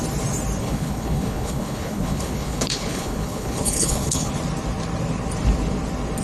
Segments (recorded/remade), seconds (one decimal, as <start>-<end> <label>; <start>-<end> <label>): 0.0-0.6 recorded; 0.6-4.3 remade; 4.3-6.2 recorded